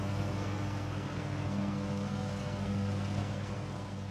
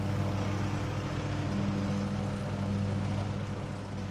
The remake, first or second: first